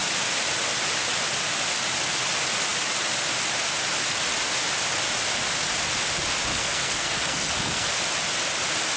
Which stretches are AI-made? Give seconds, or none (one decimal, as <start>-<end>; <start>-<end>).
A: 6.5-7.9